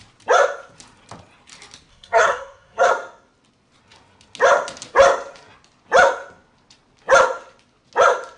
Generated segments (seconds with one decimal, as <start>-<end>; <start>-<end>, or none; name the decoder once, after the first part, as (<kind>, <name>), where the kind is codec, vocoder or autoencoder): 1.9-2.9 (codec, SNAC)